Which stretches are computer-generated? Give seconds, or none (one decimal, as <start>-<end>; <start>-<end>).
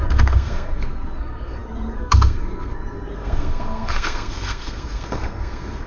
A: 0.0-5.9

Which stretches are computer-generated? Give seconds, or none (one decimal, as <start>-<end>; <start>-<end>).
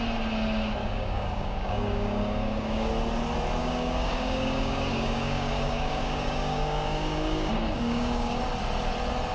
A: 0.8-2.9; 3.6-8.4